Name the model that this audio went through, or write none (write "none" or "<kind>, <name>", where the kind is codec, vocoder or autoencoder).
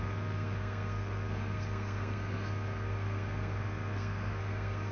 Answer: codec, SNAC